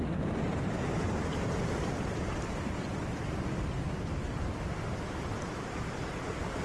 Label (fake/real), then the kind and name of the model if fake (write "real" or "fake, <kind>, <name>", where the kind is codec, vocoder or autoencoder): fake, vocoder, BigVGAN v2